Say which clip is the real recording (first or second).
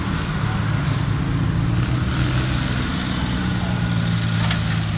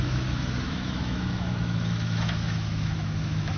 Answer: first